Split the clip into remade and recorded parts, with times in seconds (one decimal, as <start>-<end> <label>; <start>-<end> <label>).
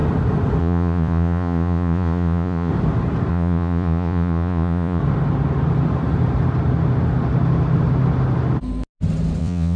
0.0-0.6 recorded; 0.6-2.7 remade; 2.7-3.3 recorded; 3.3-5.0 remade; 5.0-9.4 recorded; 9.4-9.8 remade